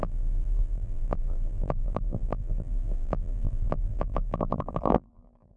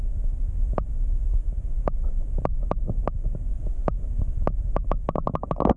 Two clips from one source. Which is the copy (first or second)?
first